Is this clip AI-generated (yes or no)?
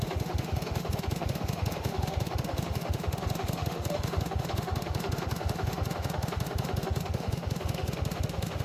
yes